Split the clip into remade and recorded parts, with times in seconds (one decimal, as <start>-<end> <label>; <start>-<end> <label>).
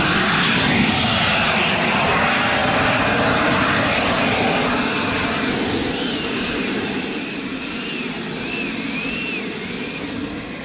0.0-10.6 recorded